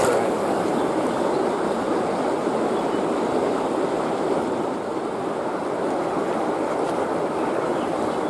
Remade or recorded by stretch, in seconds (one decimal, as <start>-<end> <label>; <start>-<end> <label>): 0.0-8.3 recorded

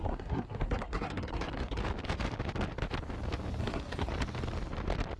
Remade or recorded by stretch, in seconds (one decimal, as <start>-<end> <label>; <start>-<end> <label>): 0.0-1.8 remade; 1.8-3.6 recorded; 3.6-4.1 remade; 4.1-5.2 recorded